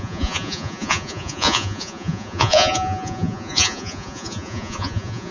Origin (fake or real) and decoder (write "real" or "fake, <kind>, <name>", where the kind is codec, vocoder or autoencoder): fake, vocoder, Vocos